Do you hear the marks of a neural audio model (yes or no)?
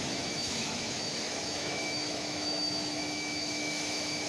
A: yes